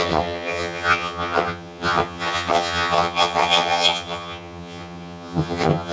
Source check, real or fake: fake